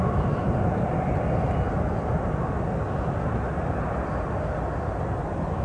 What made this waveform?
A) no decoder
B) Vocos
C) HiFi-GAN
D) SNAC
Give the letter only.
A